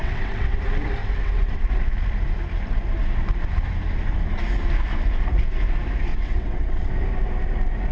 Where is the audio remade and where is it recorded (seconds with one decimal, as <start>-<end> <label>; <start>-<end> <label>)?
0.0-0.6 remade; 0.6-1.0 recorded; 1.0-1.7 remade; 1.7-6.1 recorded; 6.1-6.9 remade; 6.9-7.9 recorded